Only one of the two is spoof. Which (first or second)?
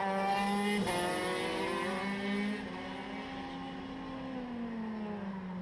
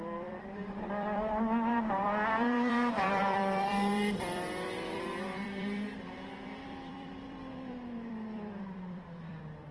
second